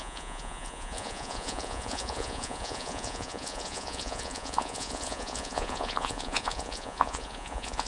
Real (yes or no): no